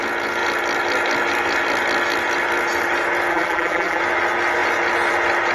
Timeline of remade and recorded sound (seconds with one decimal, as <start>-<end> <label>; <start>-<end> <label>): 0.0-3.3 recorded; 3.3-4.0 remade; 4.0-5.5 recorded